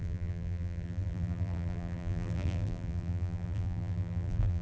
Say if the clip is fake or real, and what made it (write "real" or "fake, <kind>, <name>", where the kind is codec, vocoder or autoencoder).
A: fake, vocoder, BigVGAN v2